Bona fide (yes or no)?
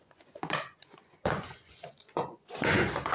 no